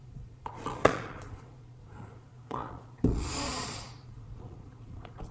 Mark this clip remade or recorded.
remade